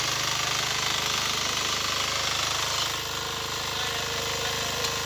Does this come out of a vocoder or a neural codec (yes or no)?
no